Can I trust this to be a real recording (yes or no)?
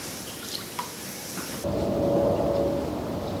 yes